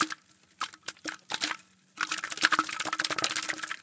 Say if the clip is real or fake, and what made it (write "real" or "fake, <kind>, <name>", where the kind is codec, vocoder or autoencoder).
real